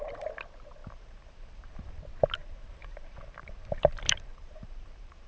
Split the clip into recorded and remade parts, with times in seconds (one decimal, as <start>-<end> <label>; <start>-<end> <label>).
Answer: 0.0-0.8 recorded; 0.8-2.0 remade; 2.0-2.4 recorded; 2.4-5.3 remade